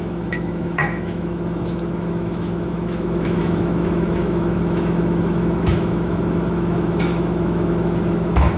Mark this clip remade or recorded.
remade